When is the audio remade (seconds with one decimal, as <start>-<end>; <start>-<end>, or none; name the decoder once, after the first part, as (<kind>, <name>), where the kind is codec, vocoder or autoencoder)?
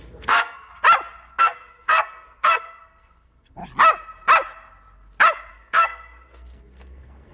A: 0.0-0.7 (codec, SNAC); 1.4-3.6; 5.5-7.3